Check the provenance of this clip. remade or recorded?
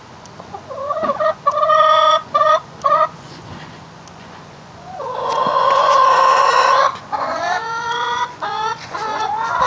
remade